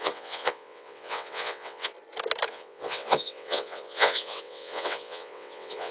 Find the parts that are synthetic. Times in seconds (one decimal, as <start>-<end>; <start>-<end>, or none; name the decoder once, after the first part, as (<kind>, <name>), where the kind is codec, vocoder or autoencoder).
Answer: 0.0-1.9 (vocoder, WaveNeXt); 2.5-5.9